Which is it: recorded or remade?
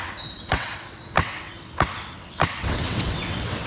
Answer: remade